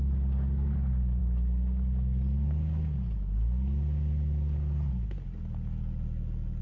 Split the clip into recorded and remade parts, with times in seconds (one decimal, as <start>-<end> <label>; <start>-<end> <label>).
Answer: 0.0-6.6 recorded